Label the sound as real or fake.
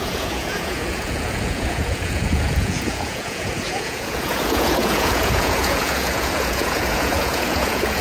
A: fake